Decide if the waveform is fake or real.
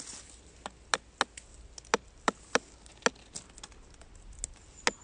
real